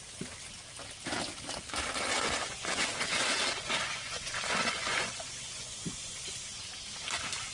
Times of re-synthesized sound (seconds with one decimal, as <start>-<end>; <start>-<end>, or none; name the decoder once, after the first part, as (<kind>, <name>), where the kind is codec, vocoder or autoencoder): 2.1-6.6 (vocoder, Vocos)